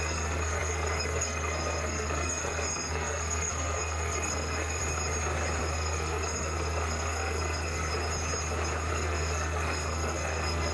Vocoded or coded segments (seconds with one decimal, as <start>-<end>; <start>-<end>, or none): 0.0-4.8; 5.6-7.9; 8.9-10.7